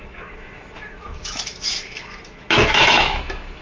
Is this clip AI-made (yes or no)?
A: yes